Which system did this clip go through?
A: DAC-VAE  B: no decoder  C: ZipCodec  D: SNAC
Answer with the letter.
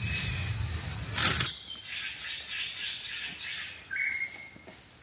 B